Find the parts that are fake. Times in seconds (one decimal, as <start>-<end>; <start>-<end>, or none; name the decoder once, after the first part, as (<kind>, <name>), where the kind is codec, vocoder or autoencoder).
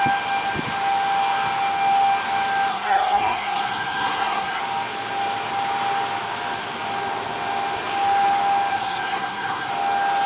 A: 2.7-4.6 (codec, SNAC); 8.7-9.7